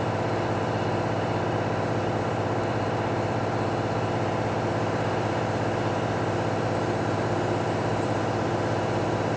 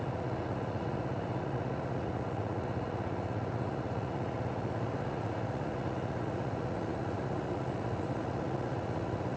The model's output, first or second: second